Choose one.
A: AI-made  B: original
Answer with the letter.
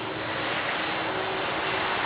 B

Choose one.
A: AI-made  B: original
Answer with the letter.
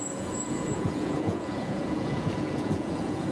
A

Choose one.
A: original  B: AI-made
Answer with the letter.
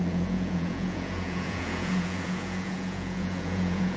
B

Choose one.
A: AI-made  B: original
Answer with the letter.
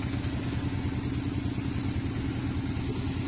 B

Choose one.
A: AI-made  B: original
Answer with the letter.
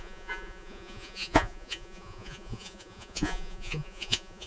A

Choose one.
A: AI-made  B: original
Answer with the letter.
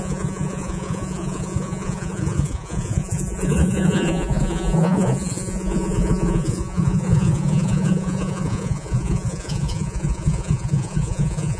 A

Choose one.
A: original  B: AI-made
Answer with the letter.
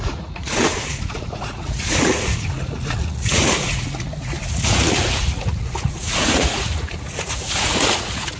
B